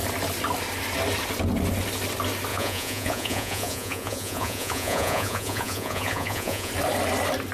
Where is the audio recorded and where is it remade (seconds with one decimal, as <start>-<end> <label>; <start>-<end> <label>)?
0.0-2.5 recorded; 2.5-6.7 remade; 6.7-7.5 recorded